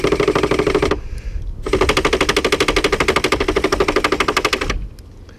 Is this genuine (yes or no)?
yes